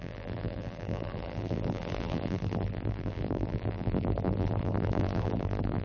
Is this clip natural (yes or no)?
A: no